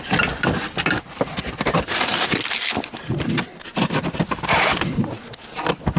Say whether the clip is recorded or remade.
recorded